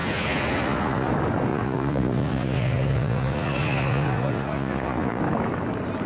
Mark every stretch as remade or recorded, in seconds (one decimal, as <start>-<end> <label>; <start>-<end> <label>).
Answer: 0.0-1.1 remade; 1.1-1.5 recorded; 1.5-5.2 remade; 5.2-6.1 recorded